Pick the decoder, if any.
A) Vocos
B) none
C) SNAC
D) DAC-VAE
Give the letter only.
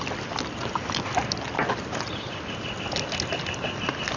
B